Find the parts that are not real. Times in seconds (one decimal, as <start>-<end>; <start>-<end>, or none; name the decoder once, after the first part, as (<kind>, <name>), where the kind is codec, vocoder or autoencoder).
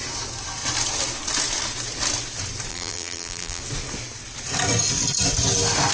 2.7-3.6 (vocoder, BigVGAN v2)